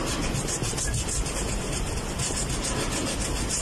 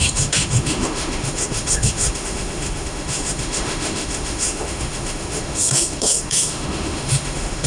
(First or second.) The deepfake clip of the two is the second